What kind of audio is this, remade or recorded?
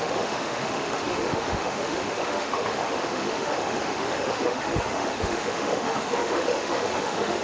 remade